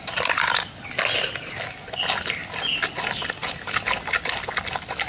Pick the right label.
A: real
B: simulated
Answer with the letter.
A